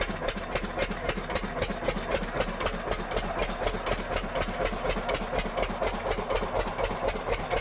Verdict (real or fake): real